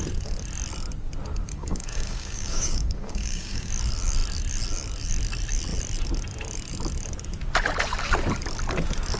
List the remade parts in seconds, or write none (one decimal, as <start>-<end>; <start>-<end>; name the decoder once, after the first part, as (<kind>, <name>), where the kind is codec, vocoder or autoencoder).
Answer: 1.5-3.7 (codec, DAC)